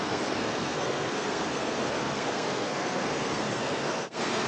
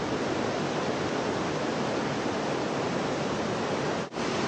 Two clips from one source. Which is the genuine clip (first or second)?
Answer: second